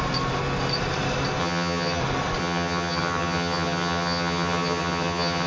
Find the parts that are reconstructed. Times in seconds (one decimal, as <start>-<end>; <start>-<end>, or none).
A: 1.4-2.0; 2.4-5.5

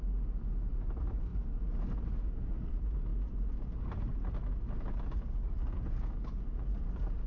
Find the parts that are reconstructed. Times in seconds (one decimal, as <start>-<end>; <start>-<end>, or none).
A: none